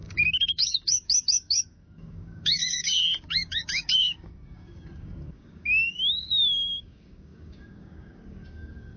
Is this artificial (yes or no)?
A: yes